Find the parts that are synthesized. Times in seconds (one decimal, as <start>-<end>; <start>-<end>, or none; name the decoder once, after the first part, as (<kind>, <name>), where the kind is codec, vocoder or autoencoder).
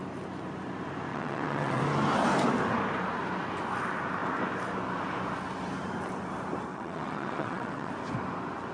1.1-1.8 (vocoder, WaveNeXt); 6.7-7.9